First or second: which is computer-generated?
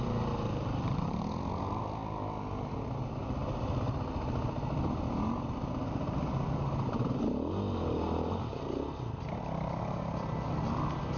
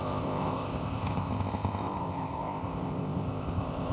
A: second